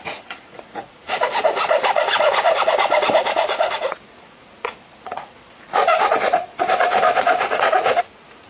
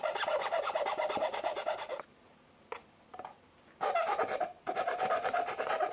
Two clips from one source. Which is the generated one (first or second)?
first